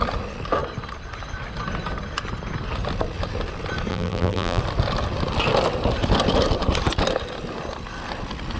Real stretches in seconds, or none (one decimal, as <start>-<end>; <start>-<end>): 0.0-3.9; 4.6-8.6